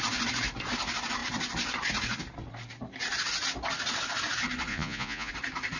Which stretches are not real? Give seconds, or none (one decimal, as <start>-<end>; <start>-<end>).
4.7-5.3